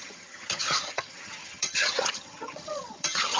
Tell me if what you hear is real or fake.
fake